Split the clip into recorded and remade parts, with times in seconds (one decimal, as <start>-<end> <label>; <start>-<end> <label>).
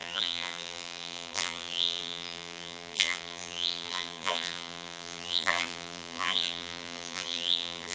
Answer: 0.0-7.9 remade